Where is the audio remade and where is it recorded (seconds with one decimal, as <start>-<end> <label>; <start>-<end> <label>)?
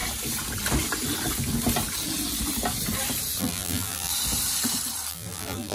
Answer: 0.0-3.4 recorded; 3.4-4.1 remade; 4.1-5.1 recorded; 5.1-5.7 remade